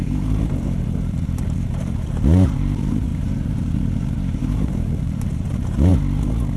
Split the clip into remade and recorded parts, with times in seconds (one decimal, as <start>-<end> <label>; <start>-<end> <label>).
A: 0.0-5.9 remade; 5.9-6.6 recorded